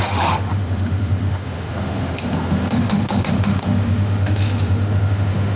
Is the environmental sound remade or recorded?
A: remade